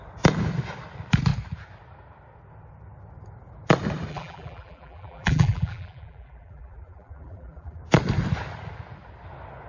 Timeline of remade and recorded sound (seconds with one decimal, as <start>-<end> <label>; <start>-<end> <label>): 0.0-4.1 recorded; 4.1-7.8 remade; 7.8-9.7 recorded